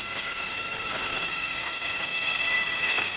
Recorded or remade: remade